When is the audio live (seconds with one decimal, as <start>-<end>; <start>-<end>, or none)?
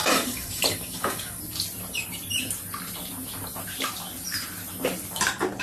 1.4-5.6